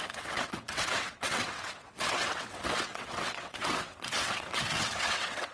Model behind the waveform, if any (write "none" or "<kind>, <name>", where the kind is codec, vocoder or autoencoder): vocoder, WaveNeXt